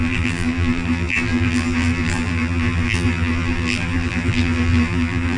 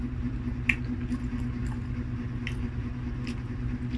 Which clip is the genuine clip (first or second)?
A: second